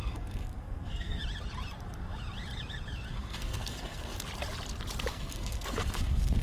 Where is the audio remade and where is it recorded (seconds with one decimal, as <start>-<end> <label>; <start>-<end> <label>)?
0.0-1.2 remade; 1.2-3.1 recorded; 3.1-4.1 remade; 4.1-5.1 recorded; 5.1-6.4 remade